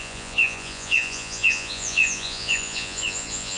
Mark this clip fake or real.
fake